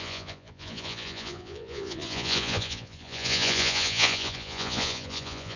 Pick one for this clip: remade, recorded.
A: remade